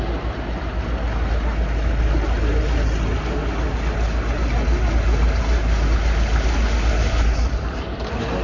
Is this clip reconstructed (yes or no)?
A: no